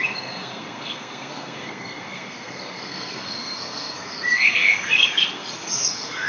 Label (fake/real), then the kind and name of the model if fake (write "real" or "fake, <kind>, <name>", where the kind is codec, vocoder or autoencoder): fake, codec, SNAC